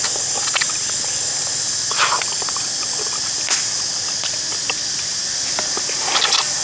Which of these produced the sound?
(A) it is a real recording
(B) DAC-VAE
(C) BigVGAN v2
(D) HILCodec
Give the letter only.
A